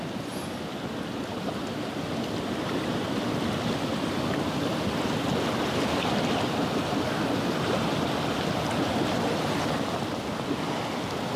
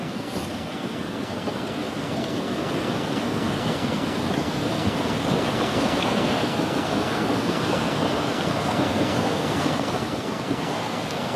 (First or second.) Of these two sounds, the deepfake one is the second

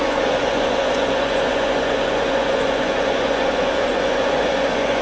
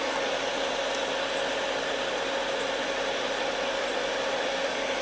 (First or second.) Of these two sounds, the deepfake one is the first